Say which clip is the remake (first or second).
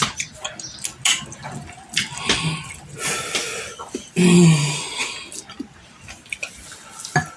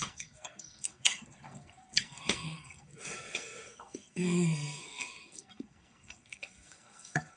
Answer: second